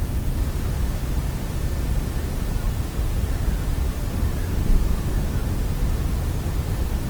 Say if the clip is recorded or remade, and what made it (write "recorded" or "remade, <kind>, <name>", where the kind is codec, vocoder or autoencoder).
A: recorded